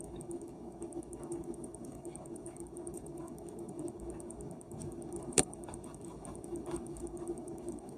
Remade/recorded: remade